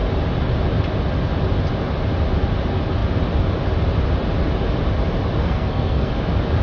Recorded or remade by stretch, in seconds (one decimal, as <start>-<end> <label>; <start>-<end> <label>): 0.0-5.4 recorded; 5.4-6.1 remade; 6.1-6.6 recorded